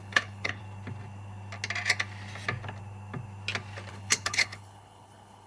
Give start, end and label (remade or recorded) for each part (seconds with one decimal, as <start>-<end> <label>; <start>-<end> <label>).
0.0-0.6 remade; 0.6-3.9 recorded; 3.9-5.5 remade